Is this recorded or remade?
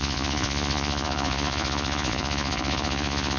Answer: remade